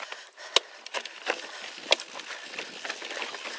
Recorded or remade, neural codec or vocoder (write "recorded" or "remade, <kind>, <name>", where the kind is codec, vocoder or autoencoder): recorded